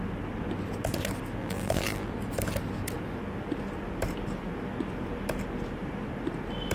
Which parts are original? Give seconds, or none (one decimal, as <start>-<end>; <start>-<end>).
0.0-1.4; 2.1-6.7